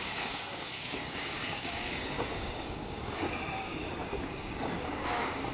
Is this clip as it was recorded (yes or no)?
no